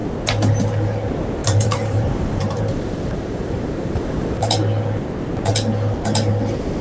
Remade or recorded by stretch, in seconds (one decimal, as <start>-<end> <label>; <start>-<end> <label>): 0.0-1.4 recorded; 1.4-4.5 remade; 4.5-6.8 recorded